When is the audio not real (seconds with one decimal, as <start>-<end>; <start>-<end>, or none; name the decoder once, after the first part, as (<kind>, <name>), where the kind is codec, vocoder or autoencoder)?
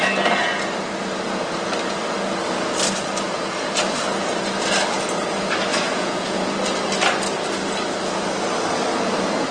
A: 5.7-6.5 (vocoder, Vocos)